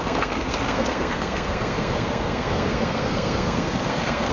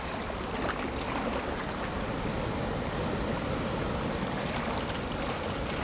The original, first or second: second